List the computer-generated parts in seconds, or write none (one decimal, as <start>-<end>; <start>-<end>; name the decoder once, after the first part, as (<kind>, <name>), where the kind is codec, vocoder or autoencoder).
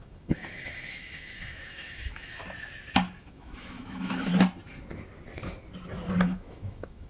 0.0-2.4 (autoencoder, DAC-VAE); 3.2-4.3; 6.2-7.1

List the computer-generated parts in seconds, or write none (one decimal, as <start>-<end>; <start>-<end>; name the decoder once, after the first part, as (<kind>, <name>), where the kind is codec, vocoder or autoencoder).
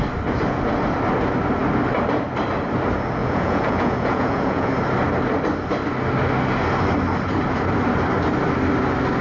3.2-4.7 (vocoder, Vocos)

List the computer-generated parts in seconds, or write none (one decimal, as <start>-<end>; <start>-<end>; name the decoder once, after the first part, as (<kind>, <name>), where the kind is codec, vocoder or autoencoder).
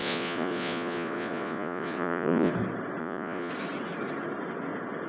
0.0-2.5 (vocoder, Vocos); 3.0-3.5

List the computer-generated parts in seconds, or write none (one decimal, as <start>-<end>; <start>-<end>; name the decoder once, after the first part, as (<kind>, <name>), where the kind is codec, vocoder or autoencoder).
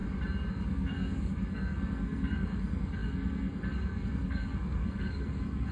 0.5-5.7 (codec, SNAC)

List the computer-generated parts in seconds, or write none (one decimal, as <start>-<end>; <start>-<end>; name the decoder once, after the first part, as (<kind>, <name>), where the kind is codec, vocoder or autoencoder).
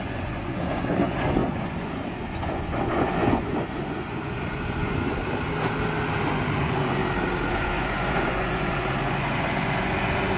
0.0-5.2 (vocoder, Vocos); 6.6-7.0; 7.5-10.4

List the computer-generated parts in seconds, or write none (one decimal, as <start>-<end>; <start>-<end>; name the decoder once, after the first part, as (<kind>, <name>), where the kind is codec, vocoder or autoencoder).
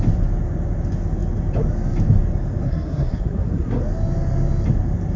2.6-3.8 (codec, SNAC)